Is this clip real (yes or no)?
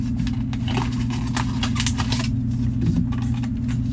yes